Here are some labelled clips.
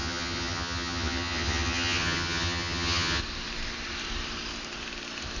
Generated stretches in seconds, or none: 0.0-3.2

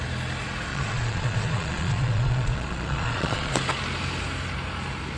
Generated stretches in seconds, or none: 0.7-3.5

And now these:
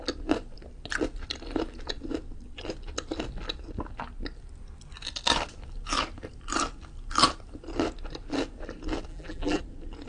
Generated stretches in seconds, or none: 9.1-9.6